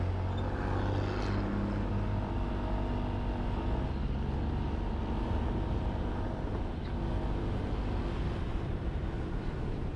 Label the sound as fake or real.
real